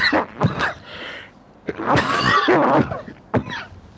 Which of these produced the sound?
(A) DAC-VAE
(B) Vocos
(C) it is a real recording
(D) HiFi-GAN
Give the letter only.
C